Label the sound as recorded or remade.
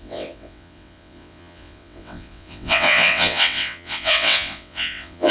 remade